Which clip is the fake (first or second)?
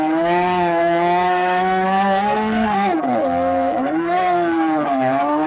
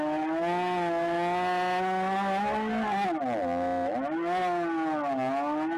first